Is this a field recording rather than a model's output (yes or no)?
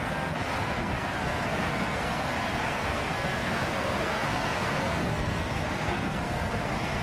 no